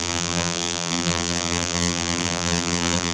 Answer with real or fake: fake